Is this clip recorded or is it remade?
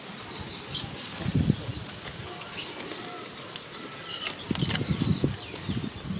recorded